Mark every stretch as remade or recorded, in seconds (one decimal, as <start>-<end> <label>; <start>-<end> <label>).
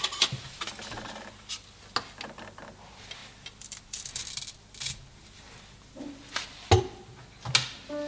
0.0-8.1 recorded